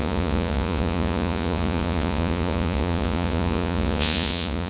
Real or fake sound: fake